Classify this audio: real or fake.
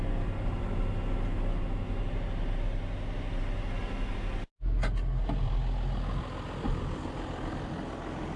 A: real